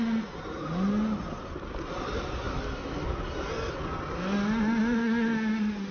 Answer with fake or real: real